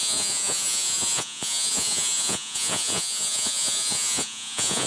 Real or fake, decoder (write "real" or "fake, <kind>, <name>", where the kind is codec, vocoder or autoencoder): fake, vocoder, Vocos